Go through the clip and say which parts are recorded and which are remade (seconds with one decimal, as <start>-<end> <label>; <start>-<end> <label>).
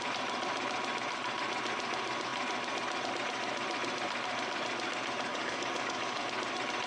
0.0-5.3 recorded; 5.3-6.2 remade; 6.2-6.9 recorded